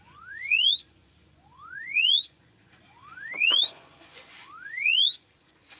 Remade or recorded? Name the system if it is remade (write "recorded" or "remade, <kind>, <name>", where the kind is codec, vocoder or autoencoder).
remade, vocoder, Vocos